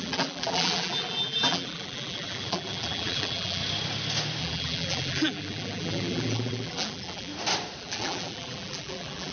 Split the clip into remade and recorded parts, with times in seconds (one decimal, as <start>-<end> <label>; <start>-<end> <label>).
0.0-3.6 remade; 3.6-4.4 recorded; 4.4-7.3 remade; 7.3-7.8 recorded; 7.8-9.3 remade